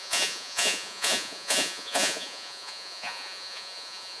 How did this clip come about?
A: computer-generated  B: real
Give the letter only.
A